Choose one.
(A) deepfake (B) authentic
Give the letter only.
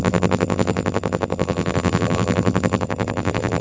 A